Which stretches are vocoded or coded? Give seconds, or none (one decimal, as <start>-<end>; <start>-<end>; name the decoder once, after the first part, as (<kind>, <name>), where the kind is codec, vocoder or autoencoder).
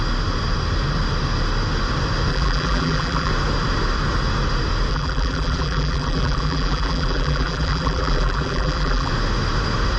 2.3-3.3 (vocoder, BigVGAN v2); 4.9-9.1